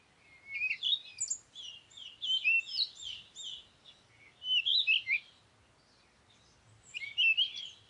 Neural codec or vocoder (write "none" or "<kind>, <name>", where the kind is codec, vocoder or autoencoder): none